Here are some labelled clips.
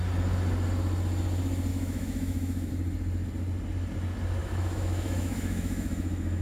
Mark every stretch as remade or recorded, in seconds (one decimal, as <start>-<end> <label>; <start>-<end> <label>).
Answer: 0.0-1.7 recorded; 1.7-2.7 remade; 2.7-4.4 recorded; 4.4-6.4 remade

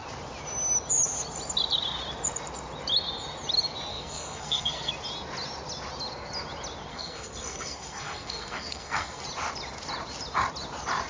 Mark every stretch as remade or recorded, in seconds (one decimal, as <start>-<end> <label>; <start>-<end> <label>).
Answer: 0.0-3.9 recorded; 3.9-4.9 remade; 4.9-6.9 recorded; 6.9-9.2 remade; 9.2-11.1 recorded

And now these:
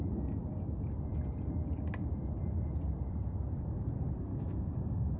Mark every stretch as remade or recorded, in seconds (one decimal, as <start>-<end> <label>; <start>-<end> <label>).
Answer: 0.0-4.3 recorded; 4.3-5.2 remade